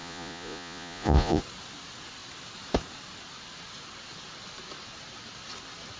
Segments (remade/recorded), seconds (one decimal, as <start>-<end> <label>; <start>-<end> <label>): 0.0-1.4 remade; 1.4-6.0 recorded